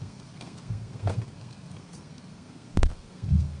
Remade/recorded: remade